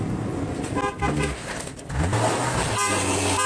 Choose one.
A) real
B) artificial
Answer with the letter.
A